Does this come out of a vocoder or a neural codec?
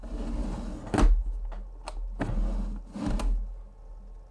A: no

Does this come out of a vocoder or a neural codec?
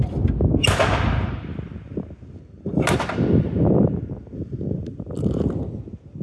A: no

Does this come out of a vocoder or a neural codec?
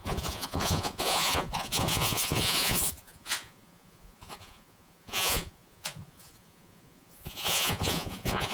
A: yes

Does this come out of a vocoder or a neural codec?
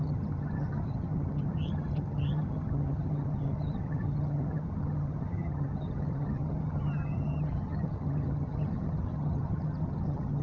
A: yes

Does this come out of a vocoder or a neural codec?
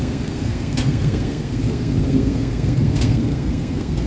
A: yes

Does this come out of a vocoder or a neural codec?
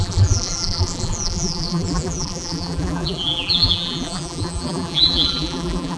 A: yes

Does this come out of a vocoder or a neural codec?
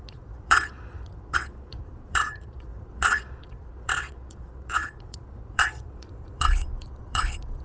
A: yes